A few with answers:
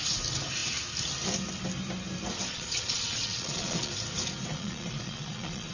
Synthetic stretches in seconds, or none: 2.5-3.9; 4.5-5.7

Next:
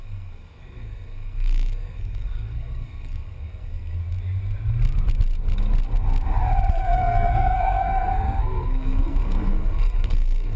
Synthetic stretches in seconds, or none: 0.0-4.0; 6.7-10.6

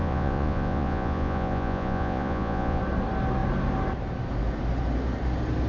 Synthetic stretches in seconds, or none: 0.0-2.8

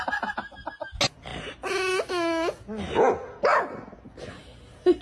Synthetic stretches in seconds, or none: none

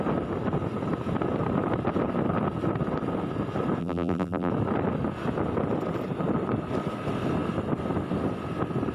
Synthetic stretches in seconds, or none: 3.8-4.5